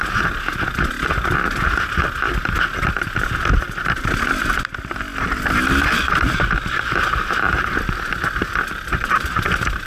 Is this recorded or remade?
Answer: recorded